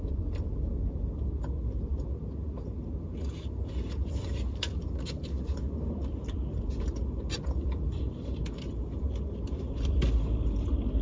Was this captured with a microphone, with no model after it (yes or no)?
no